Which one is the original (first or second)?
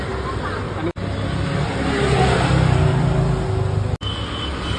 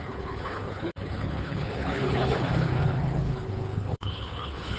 first